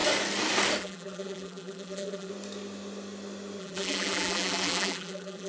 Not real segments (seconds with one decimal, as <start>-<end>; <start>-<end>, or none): 0.8-2.3; 3.6-5.5